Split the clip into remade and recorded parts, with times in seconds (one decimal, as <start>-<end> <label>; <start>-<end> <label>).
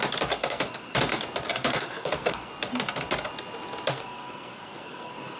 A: 0.0-0.4 recorded; 0.4-1.0 remade; 1.0-1.5 recorded; 1.5-2.5 remade; 2.5-3.9 recorded; 3.9-5.4 remade